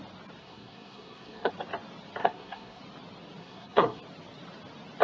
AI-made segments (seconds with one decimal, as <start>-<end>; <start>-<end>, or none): 0.4-1.5; 2.2-2.8; 3.4-4.0